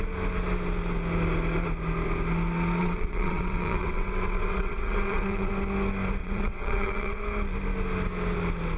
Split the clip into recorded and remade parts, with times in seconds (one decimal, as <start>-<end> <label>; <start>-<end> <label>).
0.0-2.8 recorded; 2.8-5.5 remade; 5.5-6.2 recorded; 6.2-7.2 remade; 7.2-8.8 recorded